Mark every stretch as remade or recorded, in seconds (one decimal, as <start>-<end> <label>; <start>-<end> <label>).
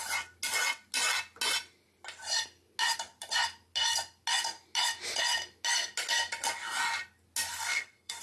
0.0-7.5 recorded; 7.5-8.2 remade